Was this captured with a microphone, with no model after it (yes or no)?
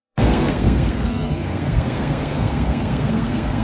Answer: no